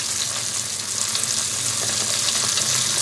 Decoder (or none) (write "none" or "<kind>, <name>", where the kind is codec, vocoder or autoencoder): none